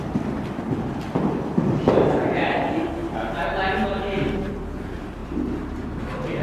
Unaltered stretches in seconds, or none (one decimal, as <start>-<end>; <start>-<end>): 3.0-3.7